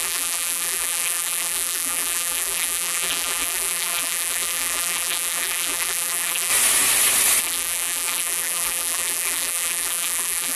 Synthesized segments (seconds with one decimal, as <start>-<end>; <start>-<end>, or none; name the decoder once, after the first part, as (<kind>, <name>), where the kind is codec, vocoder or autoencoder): 0.0-6.5 (vocoder, BigVGAN v2); 7.4-10.6